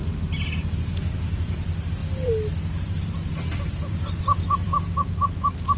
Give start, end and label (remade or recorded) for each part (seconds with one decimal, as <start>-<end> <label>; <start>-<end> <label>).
0.0-5.8 recorded